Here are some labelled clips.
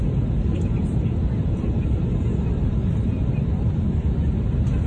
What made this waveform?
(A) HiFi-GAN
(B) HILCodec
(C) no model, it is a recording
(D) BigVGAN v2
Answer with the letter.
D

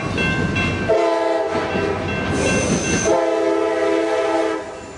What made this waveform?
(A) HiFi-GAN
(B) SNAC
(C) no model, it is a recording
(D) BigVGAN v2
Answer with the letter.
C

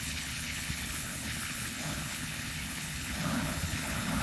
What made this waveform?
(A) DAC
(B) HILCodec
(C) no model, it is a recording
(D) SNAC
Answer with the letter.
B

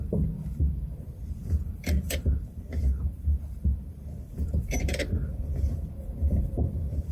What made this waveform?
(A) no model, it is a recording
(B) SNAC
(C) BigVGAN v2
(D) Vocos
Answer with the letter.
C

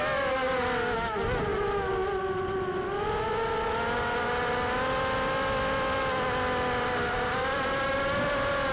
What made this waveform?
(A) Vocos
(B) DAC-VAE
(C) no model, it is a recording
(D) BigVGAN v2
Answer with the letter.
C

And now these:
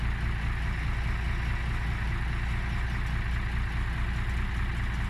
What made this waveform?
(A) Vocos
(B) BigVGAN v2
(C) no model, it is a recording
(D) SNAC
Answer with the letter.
C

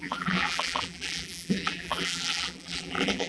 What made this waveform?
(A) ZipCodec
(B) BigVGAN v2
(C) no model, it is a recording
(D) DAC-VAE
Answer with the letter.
B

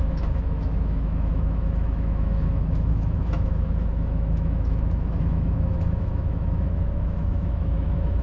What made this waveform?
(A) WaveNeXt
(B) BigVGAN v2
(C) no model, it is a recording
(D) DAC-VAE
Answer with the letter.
D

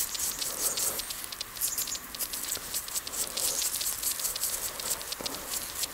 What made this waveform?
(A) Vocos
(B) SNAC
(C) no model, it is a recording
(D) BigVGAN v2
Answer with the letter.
C